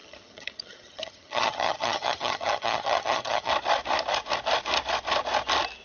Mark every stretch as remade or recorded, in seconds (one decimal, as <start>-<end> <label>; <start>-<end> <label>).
0.0-3.5 remade; 3.5-5.8 recorded